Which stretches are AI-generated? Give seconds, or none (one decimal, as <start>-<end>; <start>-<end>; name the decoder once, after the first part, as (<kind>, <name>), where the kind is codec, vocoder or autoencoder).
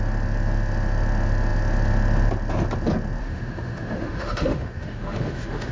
3.2-5.7 (autoencoder, DAC-VAE)